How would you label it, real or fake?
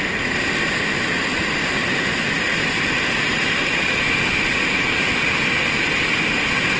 real